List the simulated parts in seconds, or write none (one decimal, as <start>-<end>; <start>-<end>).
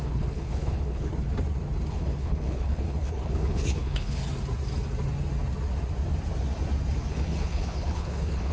0.0-1.1; 1.9-4.2; 7.1-8.5